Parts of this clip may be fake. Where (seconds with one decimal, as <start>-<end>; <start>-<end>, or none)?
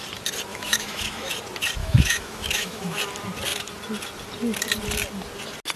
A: 0.5-1.3; 1.8-3.0